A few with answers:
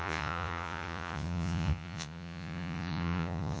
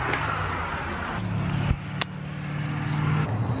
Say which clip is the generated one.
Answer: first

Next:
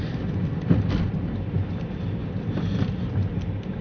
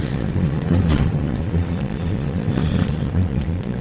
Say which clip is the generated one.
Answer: second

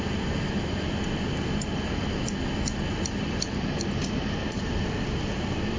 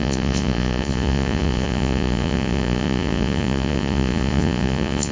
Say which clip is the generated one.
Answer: second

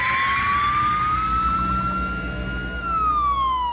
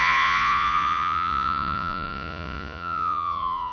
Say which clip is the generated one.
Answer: second